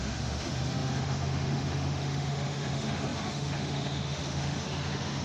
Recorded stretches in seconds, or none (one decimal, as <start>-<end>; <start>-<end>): none